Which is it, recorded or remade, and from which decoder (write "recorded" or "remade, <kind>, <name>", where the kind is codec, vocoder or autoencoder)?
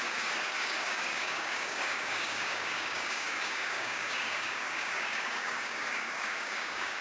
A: remade, codec, DAC